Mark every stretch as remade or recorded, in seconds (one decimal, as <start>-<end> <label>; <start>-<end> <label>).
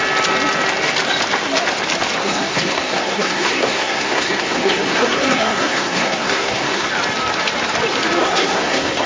0.0-2.2 recorded; 2.2-6.9 remade; 6.9-8.2 recorded; 8.2-9.1 remade